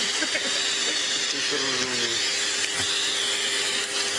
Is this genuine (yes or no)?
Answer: yes